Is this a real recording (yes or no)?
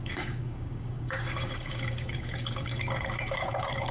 no